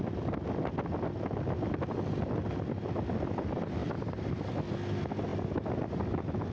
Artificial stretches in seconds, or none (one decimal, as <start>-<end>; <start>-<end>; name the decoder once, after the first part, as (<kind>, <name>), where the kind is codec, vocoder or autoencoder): 3.8-4.5 (vocoder, BigVGAN v2)